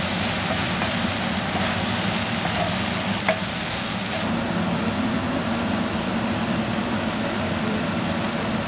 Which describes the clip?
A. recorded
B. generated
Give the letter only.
A